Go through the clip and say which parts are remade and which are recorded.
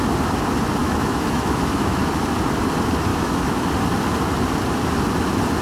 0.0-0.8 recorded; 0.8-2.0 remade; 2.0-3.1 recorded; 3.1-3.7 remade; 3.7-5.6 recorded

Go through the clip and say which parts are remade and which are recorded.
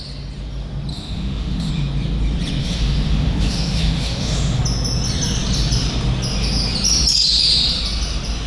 0.0-0.9 recorded; 0.9-1.7 remade; 1.7-2.6 recorded; 2.6-4.6 remade; 4.6-8.5 recorded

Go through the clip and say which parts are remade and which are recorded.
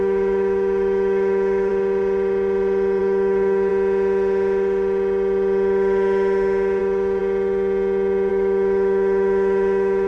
0.0-1.7 remade; 1.7-3.0 recorded; 3.0-3.7 remade; 3.7-6.8 recorded; 6.8-7.2 remade; 7.2-8.3 recorded; 8.3-10.1 remade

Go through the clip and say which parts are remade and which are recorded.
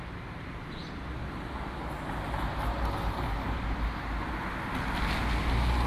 0.0-5.9 recorded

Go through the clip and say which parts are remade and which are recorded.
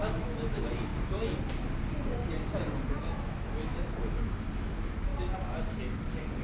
0.0-0.9 remade; 0.9-2.9 recorded; 2.9-5.1 remade; 5.1-6.4 recorded